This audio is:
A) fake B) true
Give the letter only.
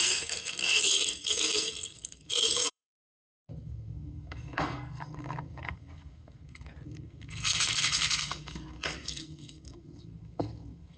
A